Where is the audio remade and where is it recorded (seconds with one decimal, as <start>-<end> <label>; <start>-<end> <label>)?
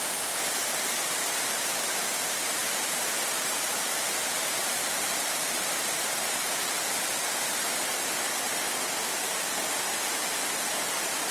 0.0-2.6 recorded; 2.6-5.5 remade; 5.5-9.0 recorded; 9.0-10.3 remade; 10.3-11.3 recorded